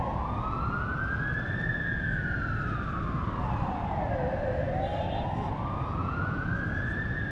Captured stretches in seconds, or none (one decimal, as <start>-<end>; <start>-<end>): 0.0-6.0; 6.5-7.3